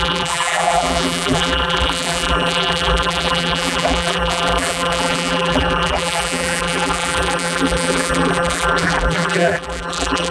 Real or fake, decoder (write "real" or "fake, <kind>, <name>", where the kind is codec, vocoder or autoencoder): fake, vocoder, BigVGAN v2